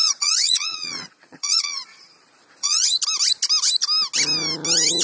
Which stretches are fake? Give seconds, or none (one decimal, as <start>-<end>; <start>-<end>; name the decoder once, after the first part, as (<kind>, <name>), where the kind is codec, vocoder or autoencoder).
0.0-3.0 (vocoder, Vocos)